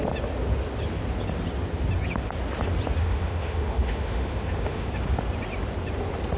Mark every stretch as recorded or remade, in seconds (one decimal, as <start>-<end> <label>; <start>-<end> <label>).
0.0-3.0 recorded; 3.0-4.9 remade; 4.9-6.4 recorded